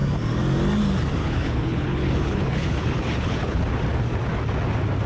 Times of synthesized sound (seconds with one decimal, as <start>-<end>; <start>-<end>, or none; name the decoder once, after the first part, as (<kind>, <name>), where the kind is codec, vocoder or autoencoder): 1.2-3.6 (codec, HILCodec)